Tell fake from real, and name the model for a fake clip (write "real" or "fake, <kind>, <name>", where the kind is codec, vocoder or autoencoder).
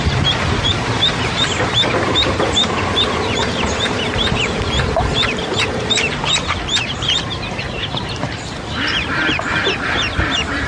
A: fake, vocoder, BigVGAN v2